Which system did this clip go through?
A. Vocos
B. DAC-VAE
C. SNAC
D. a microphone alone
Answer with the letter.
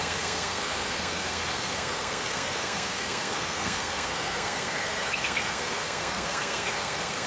C